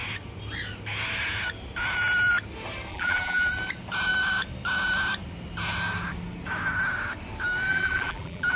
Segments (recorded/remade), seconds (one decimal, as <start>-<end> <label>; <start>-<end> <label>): 0.0-2.9 recorded; 2.9-3.5 remade; 3.5-7.7 recorded; 7.7-8.6 remade